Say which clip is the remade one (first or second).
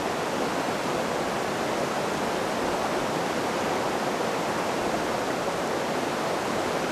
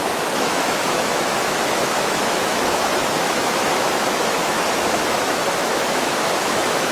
second